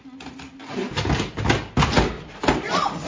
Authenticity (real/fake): real